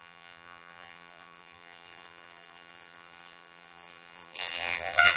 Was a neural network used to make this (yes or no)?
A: yes